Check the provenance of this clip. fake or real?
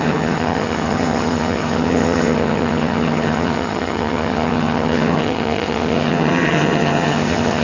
fake